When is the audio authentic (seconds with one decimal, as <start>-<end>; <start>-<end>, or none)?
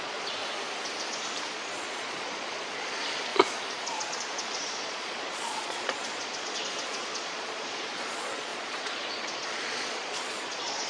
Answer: 0.4-1.5; 3.3-4.2